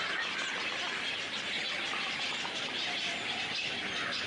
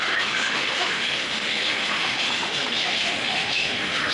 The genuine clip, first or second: first